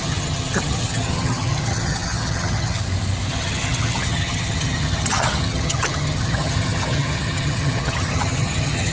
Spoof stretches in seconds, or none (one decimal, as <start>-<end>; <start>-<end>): 0.0-2.8; 3.3-8.9